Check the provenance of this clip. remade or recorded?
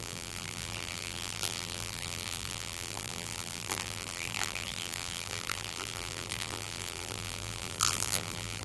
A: remade